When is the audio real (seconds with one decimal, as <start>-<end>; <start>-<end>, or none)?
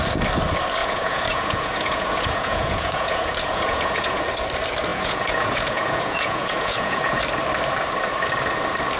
0.0-0.8; 4.2-4.9; 7.2-9.0